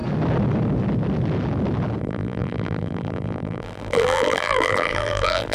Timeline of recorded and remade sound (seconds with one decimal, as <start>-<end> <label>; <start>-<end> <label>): 0.0-2.0 recorded; 2.0-5.5 remade